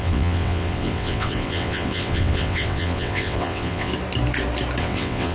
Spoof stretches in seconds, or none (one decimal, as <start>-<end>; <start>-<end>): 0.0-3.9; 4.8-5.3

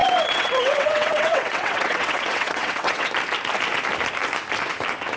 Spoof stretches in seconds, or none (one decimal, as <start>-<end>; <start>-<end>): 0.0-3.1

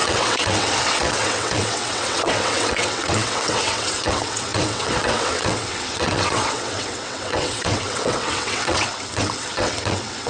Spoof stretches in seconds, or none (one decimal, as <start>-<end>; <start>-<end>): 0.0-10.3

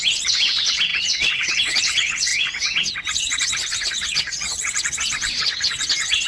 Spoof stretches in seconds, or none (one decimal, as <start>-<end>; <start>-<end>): 0.0-6.3

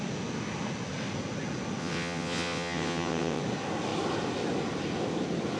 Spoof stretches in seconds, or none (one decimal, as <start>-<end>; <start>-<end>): 1.8-3.4

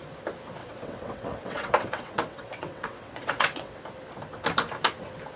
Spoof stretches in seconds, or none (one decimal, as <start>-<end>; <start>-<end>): 0.6-3.8

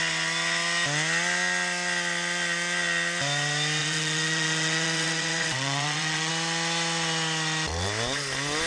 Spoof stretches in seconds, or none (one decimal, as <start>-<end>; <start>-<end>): 3.8-6.3